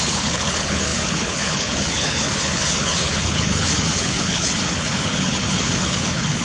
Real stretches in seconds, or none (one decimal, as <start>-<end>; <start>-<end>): none